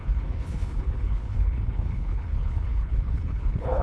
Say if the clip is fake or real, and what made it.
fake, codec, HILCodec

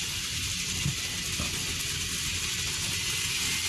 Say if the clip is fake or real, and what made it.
real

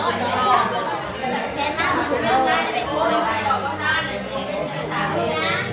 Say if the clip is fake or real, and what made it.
real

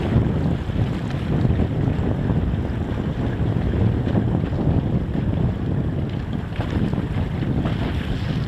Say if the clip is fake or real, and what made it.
real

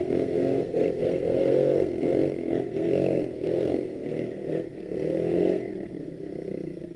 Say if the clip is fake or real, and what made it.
fake, codec, SNAC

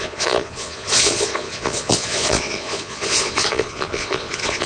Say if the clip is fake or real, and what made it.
fake, vocoder, Vocos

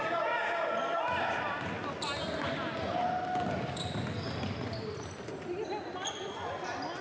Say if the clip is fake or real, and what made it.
real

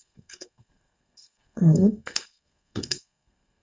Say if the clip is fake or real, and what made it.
fake, codec, SNAC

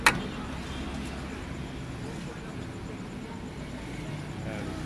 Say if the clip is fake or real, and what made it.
real